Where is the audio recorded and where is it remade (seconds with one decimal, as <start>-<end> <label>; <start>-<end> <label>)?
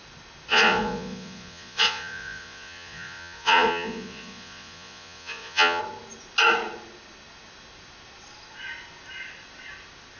0.0-0.5 recorded; 0.5-5.8 remade; 5.8-10.2 recorded